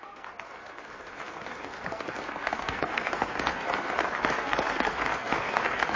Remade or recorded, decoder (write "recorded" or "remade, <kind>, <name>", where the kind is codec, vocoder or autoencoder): remade, codec, SNAC